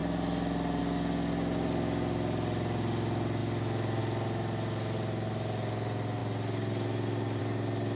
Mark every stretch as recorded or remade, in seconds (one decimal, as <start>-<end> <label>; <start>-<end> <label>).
0.0-8.0 recorded